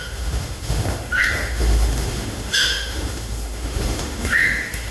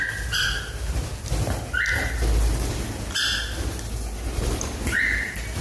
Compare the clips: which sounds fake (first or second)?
first